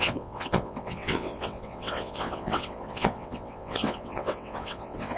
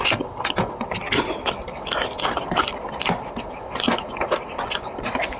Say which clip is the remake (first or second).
first